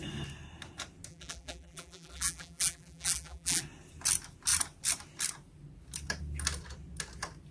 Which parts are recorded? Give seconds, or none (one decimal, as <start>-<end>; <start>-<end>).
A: 0.0-1.1; 3.6-7.5